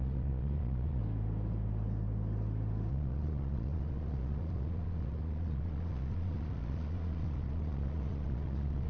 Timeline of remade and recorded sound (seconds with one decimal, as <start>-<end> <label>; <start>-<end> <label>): 0.0-1.0 remade; 1.0-2.9 recorded; 2.9-8.9 remade